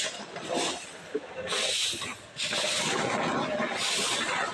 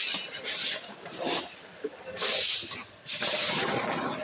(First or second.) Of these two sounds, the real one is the first